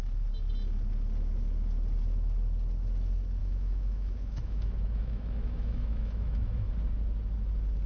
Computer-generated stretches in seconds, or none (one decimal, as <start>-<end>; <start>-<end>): 3.4-6.7

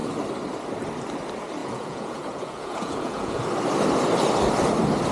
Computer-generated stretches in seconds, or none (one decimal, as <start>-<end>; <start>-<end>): 1.6-3.4

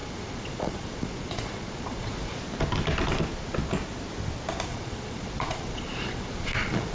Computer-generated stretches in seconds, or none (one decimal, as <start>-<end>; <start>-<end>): 0.0-2.4; 4.7-6.9